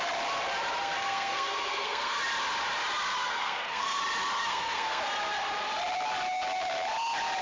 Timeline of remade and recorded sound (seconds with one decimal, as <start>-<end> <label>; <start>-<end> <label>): 0.0-0.8 recorded; 0.8-2.2 remade; 2.2-3.2 recorded; 3.2-4.0 remade; 4.0-4.4 recorded; 4.4-5.0 remade; 5.0-7.4 recorded